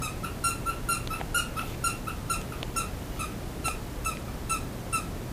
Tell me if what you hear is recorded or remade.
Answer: recorded